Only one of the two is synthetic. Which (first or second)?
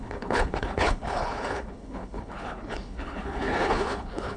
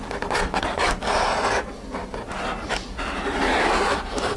first